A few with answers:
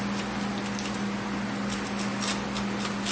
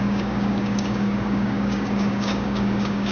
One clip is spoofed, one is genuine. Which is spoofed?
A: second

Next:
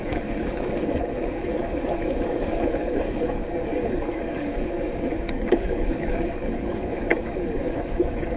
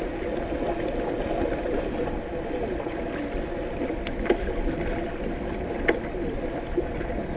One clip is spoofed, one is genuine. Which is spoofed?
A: first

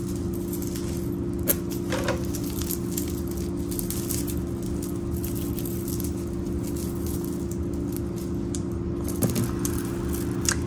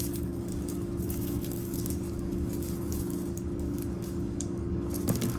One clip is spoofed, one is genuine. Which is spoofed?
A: second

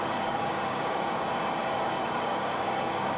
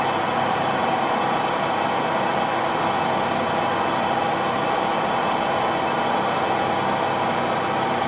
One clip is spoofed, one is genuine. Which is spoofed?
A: first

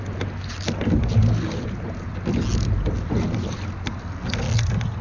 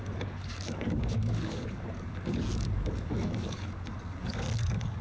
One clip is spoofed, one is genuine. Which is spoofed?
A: second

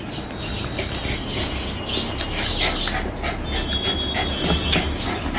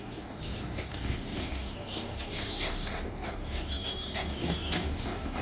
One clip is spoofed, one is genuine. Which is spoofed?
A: second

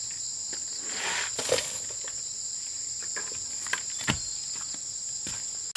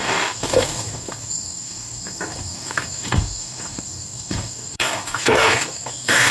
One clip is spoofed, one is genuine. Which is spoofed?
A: second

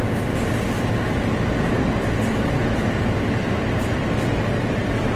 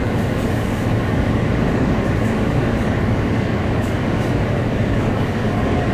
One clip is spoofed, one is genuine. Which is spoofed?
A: second